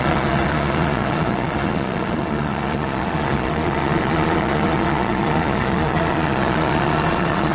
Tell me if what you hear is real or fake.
fake